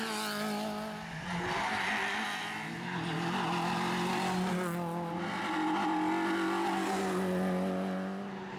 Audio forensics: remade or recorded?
recorded